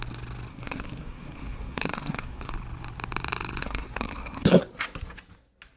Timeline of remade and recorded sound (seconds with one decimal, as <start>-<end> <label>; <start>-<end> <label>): 0.0-0.5 recorded; 0.5-2.5 remade; 2.5-3.6 recorded; 3.6-4.6 remade; 4.6-5.8 recorded